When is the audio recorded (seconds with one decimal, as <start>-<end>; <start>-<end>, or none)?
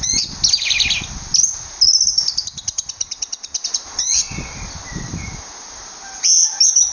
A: 0.0-6.9